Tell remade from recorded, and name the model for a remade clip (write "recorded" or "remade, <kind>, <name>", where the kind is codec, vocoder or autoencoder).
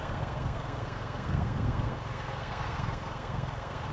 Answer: remade, codec, SNAC